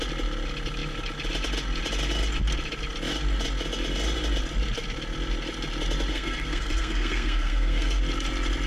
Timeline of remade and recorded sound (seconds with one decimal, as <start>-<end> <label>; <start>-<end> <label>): 0.0-6.1 recorded; 6.1-8.0 remade; 8.0-8.7 recorded